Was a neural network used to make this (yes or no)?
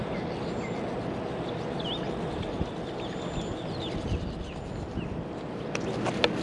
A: no